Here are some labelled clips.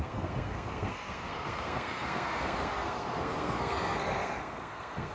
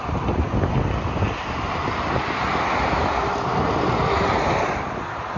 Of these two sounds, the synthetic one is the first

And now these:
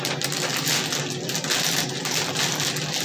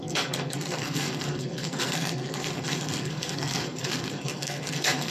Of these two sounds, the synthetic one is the second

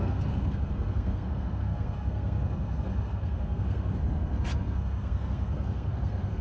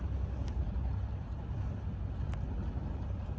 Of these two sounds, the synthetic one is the first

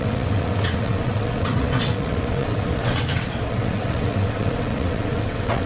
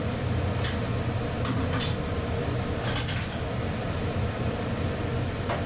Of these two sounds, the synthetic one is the first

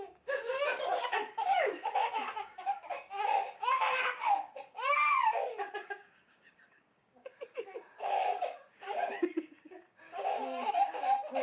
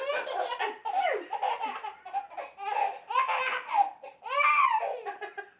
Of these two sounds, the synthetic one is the first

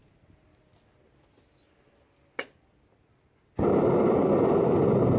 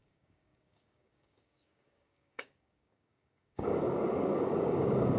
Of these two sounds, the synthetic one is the second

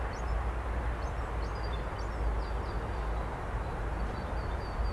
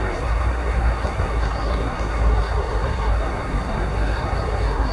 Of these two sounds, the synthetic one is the second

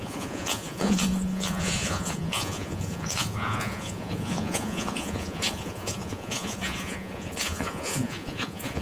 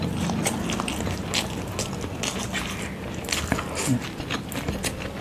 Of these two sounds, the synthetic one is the first